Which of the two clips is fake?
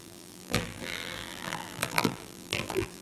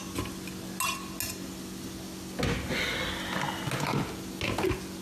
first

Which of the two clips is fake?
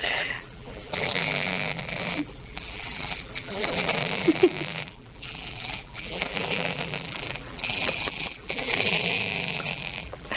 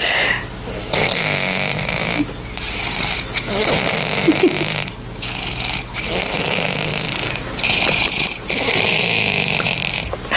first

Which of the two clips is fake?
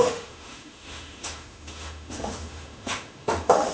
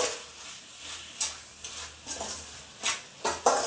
first